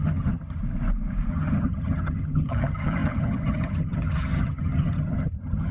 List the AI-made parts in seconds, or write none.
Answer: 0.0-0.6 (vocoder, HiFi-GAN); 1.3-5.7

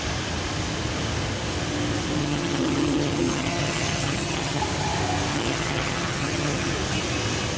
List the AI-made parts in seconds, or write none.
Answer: 2.2-4.6 (vocoder, HiFi-GAN); 5.3-6.7

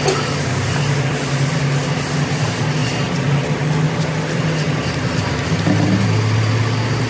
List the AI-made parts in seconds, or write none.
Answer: none

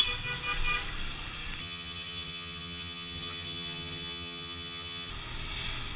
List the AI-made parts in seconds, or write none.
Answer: 1.6-5.1 (vocoder, HiFi-GAN)

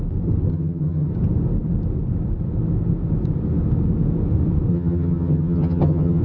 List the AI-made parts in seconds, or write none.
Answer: 0.5-1.1 (vocoder, HiFi-GAN); 4.7-6.2

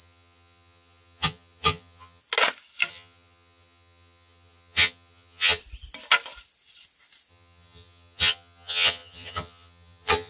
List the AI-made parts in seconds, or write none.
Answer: 0.0-2.2 (vocoder, HiFi-GAN); 2.9-5.6; 7.3-10.3

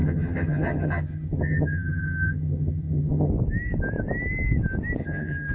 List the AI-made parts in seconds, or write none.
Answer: 0.0-3.3 (vocoder, HiFi-GAN); 5.0-5.5

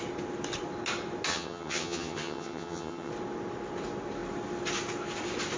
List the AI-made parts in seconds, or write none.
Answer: 1.3-3.1 (vocoder, HiFi-GAN)